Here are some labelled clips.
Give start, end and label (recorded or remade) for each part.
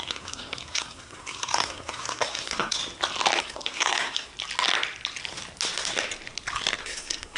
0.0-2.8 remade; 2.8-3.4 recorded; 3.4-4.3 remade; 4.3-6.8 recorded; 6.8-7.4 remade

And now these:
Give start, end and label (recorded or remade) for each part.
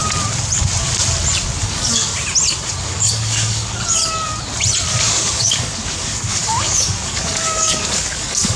0.0-1.6 recorded; 1.6-2.1 remade; 2.1-2.8 recorded; 2.8-4.0 remade; 4.0-4.9 recorded; 4.9-8.6 remade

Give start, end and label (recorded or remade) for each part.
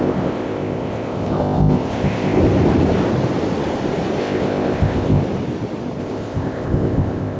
0.0-2.4 remade; 2.4-4.2 recorded; 4.2-5.2 remade; 5.2-6.0 recorded; 6.0-7.4 remade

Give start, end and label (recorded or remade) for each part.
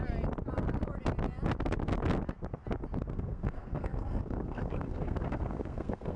0.0-3.1 recorded; 3.1-6.2 remade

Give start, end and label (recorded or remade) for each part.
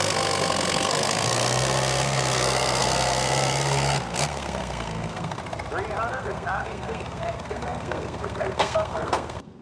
0.0-5.4 remade; 5.4-6.1 recorded; 6.1-9.6 remade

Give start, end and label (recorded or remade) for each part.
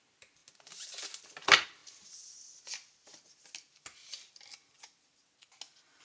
0.0-6.0 recorded